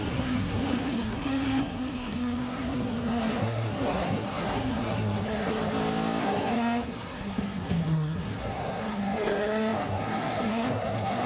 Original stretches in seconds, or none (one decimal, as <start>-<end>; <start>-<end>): 5.6-6.2